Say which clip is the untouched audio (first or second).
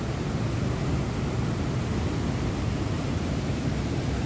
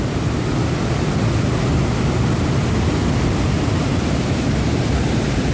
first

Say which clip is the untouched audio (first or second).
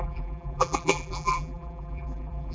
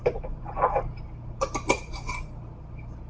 second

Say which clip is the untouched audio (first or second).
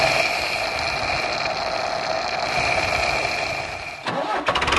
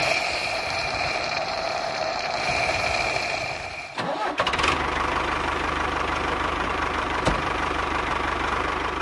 first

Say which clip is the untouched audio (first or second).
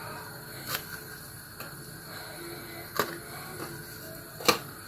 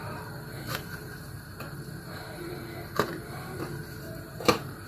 first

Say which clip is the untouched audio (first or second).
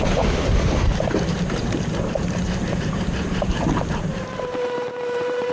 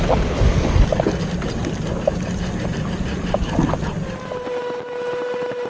second